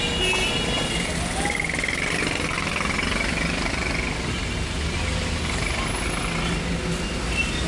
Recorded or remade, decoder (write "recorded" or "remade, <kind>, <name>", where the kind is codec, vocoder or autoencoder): recorded